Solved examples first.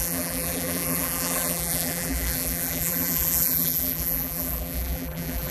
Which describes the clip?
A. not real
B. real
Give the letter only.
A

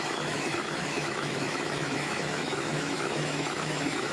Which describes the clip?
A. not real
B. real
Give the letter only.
A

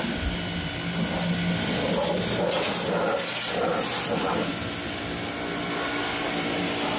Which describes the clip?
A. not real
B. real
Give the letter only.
B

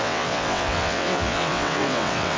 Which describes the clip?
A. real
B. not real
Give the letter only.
B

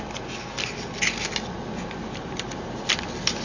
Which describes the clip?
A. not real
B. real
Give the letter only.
B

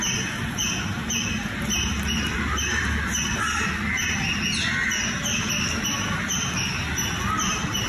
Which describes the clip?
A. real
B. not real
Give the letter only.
A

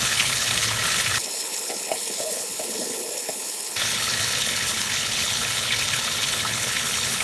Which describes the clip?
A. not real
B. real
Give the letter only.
A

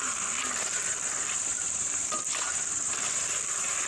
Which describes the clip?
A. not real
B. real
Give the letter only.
A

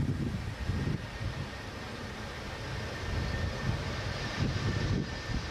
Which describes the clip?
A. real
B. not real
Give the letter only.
A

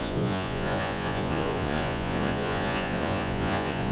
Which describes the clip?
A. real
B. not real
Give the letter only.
B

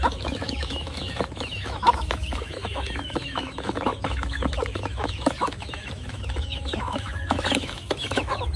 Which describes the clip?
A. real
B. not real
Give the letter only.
B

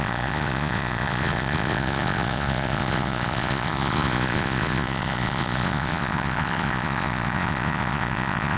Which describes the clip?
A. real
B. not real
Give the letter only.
B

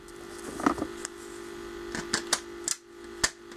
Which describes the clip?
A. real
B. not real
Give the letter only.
A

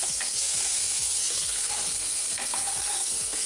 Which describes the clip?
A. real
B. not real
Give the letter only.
B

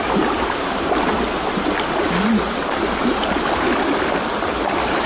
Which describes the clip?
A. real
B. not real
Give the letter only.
A